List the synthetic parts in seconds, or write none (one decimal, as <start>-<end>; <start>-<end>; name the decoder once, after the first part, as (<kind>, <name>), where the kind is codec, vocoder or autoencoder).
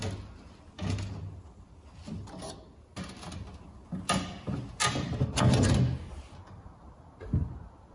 none